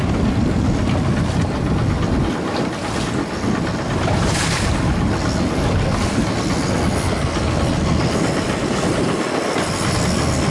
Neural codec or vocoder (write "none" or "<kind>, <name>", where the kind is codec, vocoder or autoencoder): none